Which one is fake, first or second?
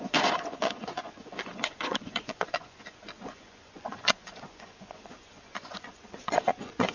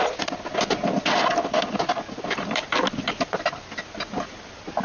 first